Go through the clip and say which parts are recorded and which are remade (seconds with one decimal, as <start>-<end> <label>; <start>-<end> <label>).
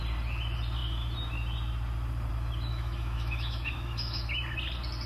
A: 0.0-2.7 recorded; 2.7-4.4 remade; 4.4-5.1 recorded